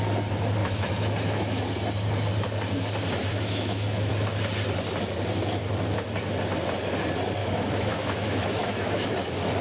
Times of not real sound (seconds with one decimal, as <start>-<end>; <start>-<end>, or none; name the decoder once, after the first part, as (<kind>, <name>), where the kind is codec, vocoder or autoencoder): 0.6-1.6 (autoencoder, DAC-VAE); 3.2-4.1; 7.4-9.1